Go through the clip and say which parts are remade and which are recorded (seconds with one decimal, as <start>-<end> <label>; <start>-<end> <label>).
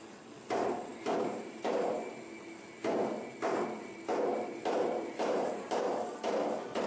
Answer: 0.0-0.9 recorded; 0.9-2.1 remade; 2.1-4.3 recorded; 4.3-5.8 remade; 5.8-6.9 recorded